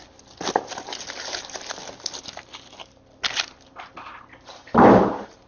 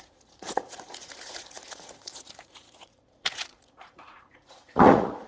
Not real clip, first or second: second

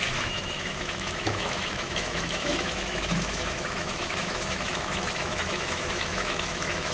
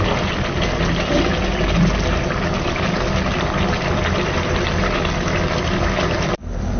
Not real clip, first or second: first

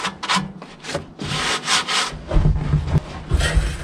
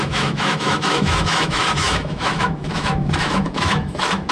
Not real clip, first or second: second